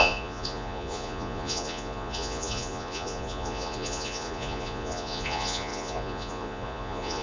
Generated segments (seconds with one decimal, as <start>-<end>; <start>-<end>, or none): 0.0-7.2